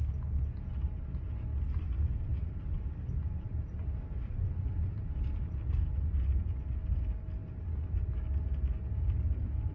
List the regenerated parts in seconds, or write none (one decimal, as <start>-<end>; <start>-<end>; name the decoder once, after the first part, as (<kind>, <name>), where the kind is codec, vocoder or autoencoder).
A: 1.5-5.8 (vocoder, BigVGAN v2)